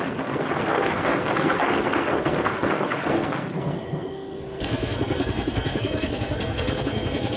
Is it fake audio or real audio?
fake